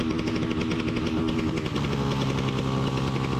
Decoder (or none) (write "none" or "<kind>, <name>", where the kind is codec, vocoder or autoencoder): none